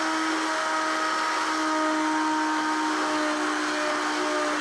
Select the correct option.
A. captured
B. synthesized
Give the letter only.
A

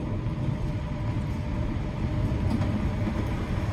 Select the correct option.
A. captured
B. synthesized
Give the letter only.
A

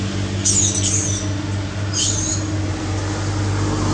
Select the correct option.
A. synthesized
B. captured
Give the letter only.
B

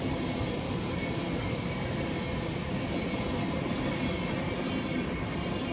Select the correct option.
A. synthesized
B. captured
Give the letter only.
B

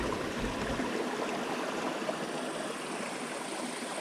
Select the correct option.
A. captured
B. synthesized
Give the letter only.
A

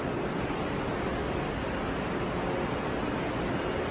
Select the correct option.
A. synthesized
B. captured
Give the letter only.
B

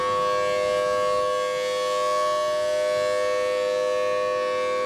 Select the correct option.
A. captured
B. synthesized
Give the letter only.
A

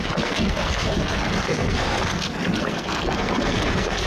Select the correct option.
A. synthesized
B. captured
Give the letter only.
A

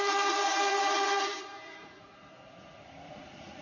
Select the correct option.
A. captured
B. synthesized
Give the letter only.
B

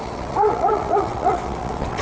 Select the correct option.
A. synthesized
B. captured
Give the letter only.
A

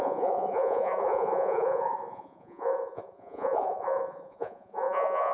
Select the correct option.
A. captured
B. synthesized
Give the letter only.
B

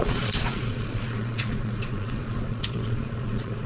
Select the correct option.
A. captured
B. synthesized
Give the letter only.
B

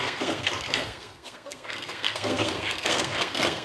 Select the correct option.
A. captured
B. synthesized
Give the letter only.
B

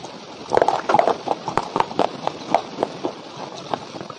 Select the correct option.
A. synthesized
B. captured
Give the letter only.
B